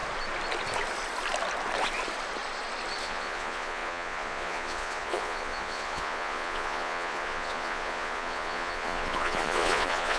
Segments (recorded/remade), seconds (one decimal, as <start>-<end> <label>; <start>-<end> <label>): 0.0-3.0 recorded; 3.0-10.2 remade